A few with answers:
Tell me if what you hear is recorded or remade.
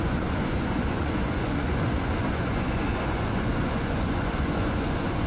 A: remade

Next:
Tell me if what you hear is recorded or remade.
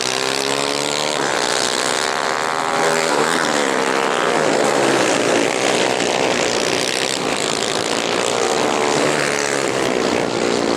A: recorded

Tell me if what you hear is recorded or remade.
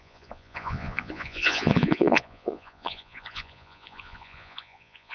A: remade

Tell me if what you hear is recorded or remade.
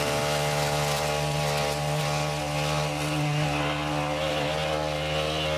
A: recorded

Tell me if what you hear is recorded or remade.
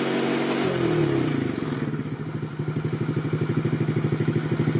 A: recorded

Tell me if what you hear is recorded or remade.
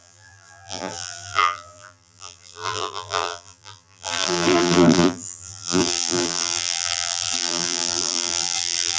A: remade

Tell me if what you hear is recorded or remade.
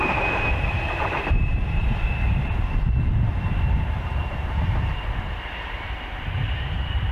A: remade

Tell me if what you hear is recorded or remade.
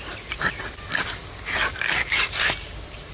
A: recorded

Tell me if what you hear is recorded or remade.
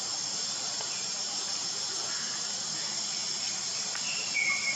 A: recorded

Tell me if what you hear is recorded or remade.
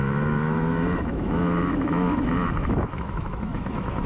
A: remade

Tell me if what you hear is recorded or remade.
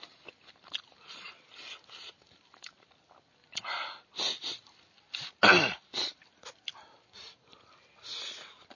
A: recorded